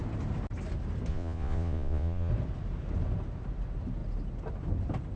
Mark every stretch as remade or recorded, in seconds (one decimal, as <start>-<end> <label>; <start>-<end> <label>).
0.0-1.1 recorded; 1.1-2.3 remade; 2.3-5.2 recorded

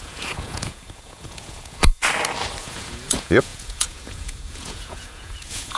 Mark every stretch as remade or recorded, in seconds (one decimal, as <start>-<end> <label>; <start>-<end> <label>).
0.0-2.0 remade; 2.0-2.6 recorded; 2.6-5.8 remade

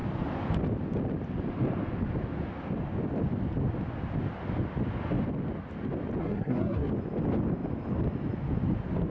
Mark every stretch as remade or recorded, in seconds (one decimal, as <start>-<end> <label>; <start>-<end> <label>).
0.0-6.2 recorded; 6.2-6.9 remade; 6.9-9.1 recorded